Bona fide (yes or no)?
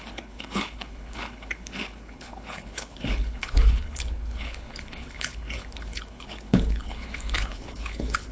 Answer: no